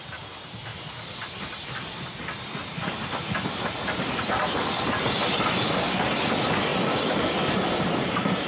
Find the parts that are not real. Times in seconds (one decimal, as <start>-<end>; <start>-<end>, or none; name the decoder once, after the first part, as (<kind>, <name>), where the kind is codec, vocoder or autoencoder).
0.7-4.3 (vocoder, BigVGAN v2); 6.7-8.1